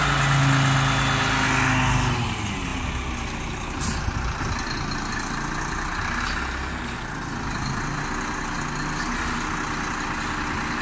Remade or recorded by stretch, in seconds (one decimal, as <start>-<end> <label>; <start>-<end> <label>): 0.0-10.8 recorded